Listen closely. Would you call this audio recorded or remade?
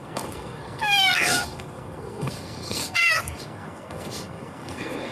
remade